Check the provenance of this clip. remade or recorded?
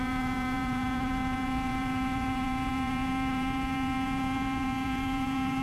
remade